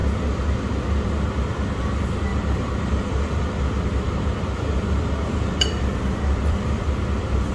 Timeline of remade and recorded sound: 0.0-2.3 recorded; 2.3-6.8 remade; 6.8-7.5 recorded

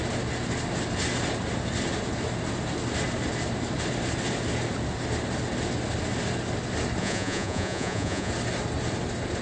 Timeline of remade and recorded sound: 0.0-7.0 recorded; 7.0-8.3 remade; 8.3-9.4 recorded